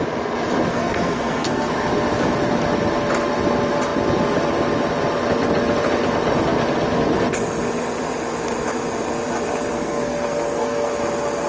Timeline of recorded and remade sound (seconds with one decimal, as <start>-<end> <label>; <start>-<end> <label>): 0.0-0.7 recorded; 0.7-1.7 remade; 1.7-9.7 recorded; 9.7-10.9 remade; 10.9-11.5 recorded